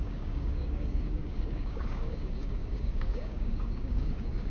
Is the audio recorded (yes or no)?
no